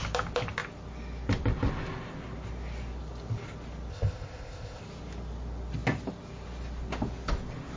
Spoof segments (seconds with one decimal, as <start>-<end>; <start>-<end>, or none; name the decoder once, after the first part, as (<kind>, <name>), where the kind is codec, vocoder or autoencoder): 3.9-4.8 (codec, ZipCodec)